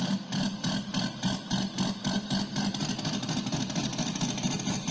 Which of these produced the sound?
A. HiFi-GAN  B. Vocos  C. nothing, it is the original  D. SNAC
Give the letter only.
C